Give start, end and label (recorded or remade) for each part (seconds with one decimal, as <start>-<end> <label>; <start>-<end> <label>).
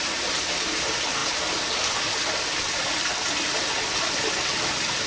0.0-5.1 recorded